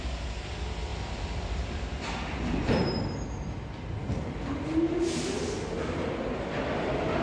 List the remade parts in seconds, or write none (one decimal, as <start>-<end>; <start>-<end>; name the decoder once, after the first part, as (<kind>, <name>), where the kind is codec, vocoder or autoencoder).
0.9-2.7 (vocoder, BigVGAN v2)